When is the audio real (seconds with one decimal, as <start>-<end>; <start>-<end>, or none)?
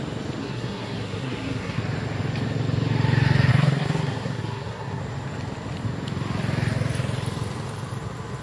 0.0-0.4; 1.8-3.5; 5.0-8.4